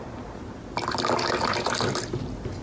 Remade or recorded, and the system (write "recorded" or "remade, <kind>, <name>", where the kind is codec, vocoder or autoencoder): recorded